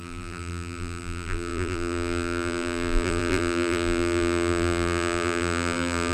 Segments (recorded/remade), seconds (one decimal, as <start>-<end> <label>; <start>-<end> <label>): 0.0-6.1 remade